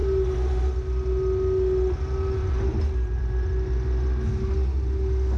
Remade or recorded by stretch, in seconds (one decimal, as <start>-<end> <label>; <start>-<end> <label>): 0.0-5.4 recorded